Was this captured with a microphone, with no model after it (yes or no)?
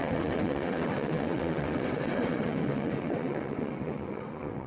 no